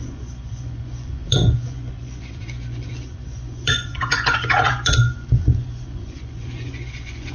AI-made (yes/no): yes